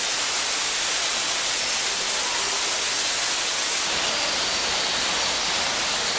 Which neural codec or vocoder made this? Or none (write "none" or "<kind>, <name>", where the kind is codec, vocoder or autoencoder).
none